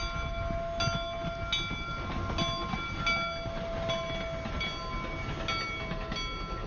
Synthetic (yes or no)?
no